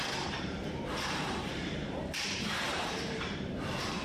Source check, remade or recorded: remade